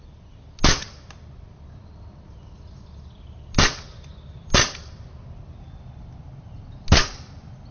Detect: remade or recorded recorded